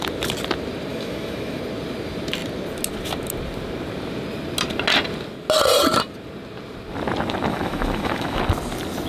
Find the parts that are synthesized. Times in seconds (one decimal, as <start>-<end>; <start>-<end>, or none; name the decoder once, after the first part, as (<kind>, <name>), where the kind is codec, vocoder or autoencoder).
0.9-1.6 (autoencoder, DAC-VAE); 7.5-8.4